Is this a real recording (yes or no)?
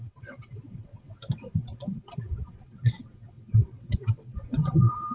no